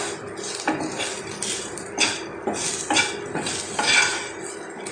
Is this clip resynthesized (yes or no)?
no